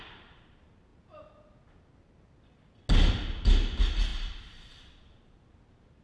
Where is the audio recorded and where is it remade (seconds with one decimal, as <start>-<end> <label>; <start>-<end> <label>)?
0.0-4.1 recorded; 4.1-4.7 remade; 4.7-6.0 recorded